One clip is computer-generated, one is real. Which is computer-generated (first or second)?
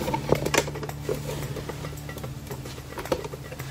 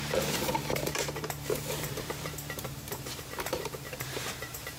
second